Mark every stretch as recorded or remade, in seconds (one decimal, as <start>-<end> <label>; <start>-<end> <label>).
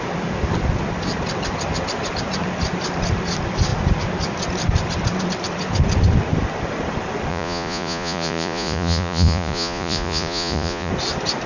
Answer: 0.0-7.3 recorded; 7.3-10.9 remade; 10.9-11.5 recorded